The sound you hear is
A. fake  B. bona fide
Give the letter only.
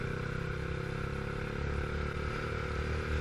B